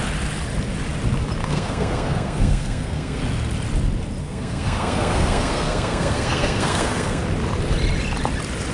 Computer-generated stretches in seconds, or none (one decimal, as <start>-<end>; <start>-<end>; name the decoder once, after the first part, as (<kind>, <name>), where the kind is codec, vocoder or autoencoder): 1.4-3.2 (codec, SNAC); 4.2-7.2